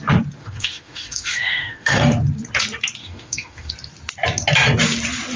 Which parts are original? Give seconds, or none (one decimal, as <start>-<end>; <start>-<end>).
0.0-0.4; 2.0-3.0; 3.7-5.4